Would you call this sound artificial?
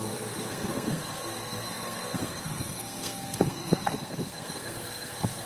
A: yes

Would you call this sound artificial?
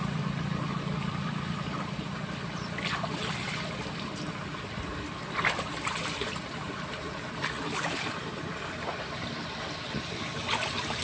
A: no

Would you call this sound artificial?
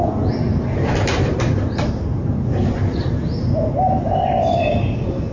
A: no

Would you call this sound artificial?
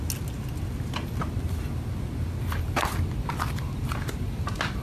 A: no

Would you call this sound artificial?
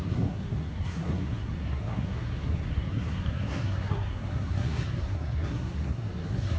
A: yes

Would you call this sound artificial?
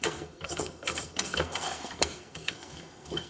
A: yes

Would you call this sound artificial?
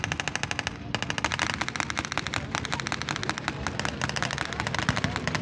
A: no